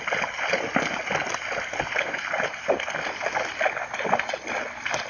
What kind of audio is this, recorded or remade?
recorded